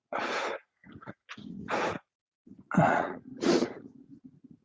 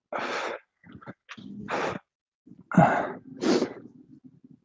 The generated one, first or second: first